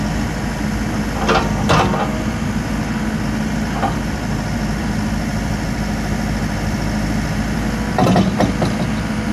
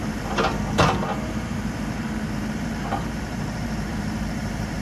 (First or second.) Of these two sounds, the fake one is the second